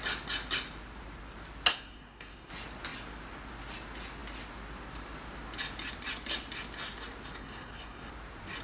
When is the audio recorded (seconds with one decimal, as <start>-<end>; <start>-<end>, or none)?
0.0-1.7; 2.5-7.4; 8.1-8.6